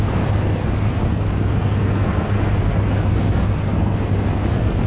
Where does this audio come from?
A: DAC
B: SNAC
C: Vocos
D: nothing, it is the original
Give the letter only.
B